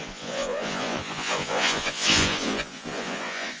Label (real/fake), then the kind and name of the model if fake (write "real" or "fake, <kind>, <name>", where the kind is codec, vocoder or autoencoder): fake, vocoder, Vocos